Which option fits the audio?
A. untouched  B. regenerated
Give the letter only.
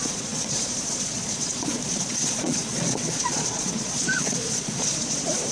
B